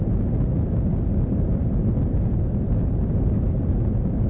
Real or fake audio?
real